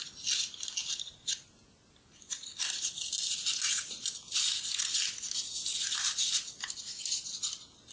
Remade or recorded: recorded